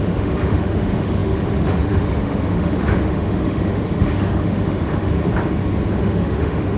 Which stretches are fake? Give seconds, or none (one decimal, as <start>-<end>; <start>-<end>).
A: 0.0-5.2; 6.0-6.8